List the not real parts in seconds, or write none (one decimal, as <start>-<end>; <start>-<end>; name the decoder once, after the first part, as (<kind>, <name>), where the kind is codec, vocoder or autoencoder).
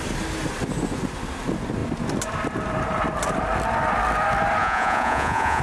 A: 4.6-5.6 (vocoder, Vocos)